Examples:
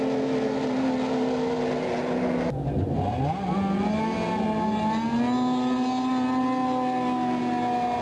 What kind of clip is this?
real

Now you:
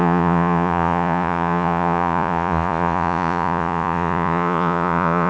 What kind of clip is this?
fake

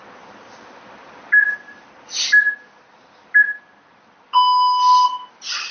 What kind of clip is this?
real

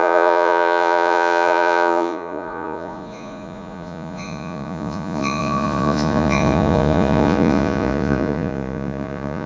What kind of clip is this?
fake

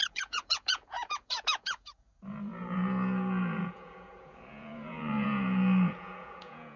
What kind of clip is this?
fake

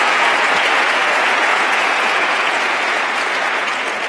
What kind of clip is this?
fake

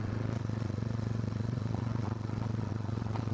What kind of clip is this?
fake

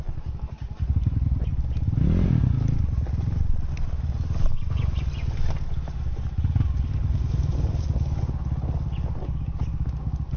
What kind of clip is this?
real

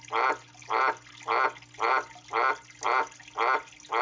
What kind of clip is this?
real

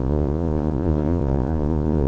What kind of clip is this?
fake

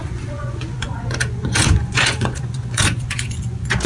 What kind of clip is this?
fake